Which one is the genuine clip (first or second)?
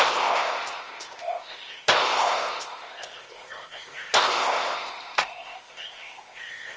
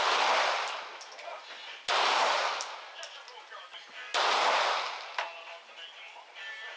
second